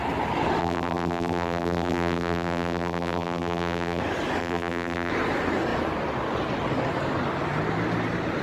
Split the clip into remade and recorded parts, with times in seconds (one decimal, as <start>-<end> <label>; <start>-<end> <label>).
0.0-0.6 recorded; 0.6-4.0 remade; 4.0-4.4 recorded; 4.4-5.1 remade; 5.1-8.4 recorded